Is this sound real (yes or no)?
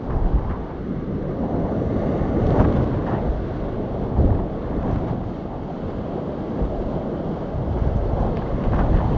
yes